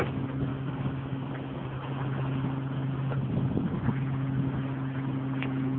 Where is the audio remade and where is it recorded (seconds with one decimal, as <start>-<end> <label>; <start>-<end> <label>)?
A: 0.0-0.5 recorded; 0.5-1.3 remade; 1.3-5.8 recorded